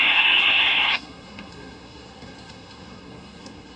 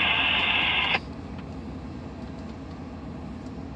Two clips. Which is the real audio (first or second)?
second